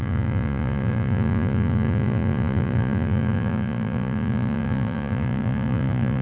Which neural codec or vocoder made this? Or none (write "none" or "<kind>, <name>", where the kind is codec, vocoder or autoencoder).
vocoder, Vocos